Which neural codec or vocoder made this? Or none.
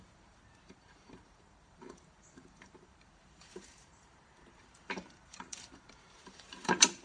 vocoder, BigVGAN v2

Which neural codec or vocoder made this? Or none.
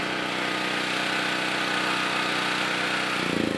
none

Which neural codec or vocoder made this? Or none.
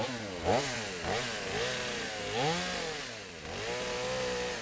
none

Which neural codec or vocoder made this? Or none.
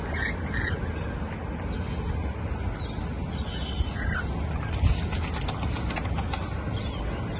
none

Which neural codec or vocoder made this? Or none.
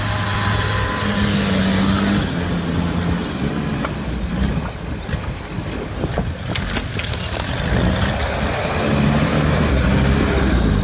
none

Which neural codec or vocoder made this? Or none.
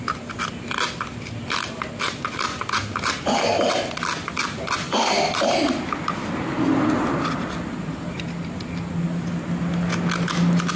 none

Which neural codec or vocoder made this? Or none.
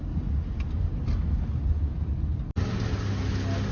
none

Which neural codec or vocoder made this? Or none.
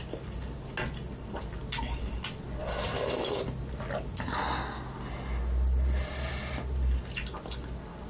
none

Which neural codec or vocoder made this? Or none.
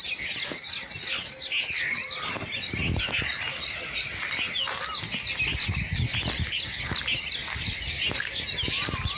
none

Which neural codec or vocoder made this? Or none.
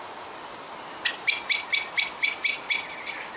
none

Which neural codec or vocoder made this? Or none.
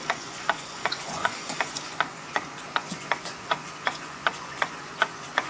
vocoder, Vocos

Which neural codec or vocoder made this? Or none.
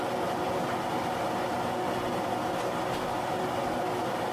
none